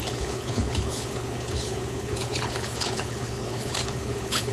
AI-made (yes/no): yes